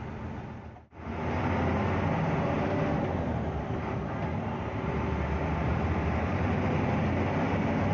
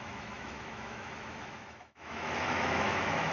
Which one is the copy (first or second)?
second